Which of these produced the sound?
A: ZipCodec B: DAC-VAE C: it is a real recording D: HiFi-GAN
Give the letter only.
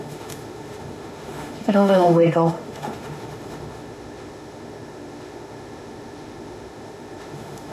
B